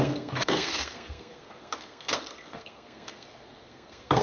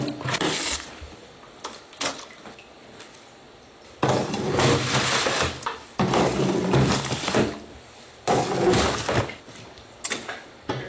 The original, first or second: second